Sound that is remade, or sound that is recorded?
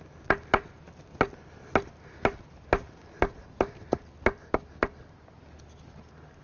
recorded